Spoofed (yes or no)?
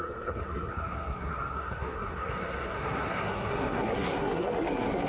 yes